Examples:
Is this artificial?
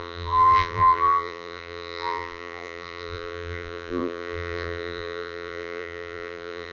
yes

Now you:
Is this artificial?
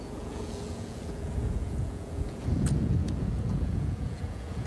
yes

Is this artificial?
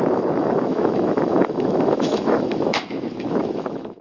yes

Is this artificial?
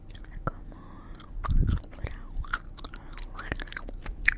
no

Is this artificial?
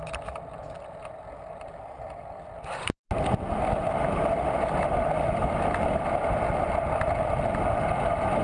no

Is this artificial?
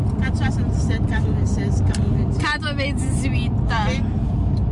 no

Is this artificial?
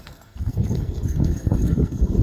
yes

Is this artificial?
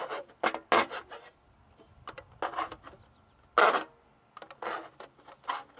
no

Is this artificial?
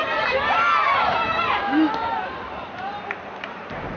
yes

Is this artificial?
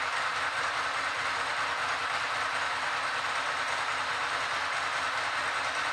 yes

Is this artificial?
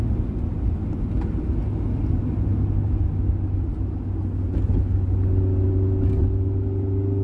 no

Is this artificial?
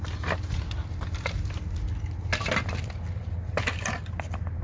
no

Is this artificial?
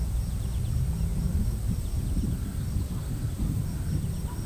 no